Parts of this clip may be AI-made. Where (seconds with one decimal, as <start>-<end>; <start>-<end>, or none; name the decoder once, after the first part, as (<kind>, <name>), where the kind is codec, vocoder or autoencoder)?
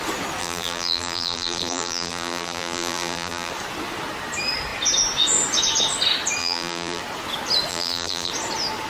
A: 0.4-3.5 (vocoder, BigVGAN v2); 6.4-7.0; 7.7-8.3